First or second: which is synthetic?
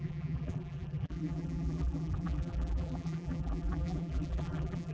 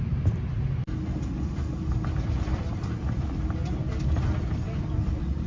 first